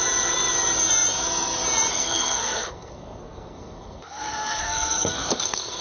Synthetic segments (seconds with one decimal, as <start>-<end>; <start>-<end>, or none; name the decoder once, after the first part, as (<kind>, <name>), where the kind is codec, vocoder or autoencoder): 1.9-5.8 (codec, SNAC)